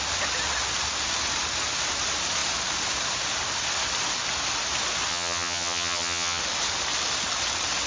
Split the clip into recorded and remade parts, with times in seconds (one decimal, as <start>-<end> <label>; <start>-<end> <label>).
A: 0.0-5.1 recorded; 5.1-6.4 remade; 6.4-7.9 recorded